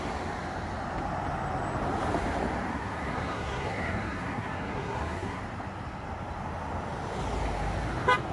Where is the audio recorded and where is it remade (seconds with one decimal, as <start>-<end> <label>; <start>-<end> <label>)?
0.0-2.7 recorded; 2.7-5.4 remade; 5.4-8.3 recorded